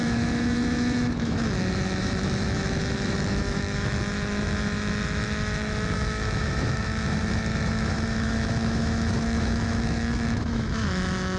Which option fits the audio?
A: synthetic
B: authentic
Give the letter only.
A